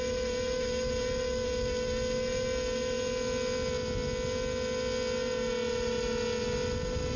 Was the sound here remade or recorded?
recorded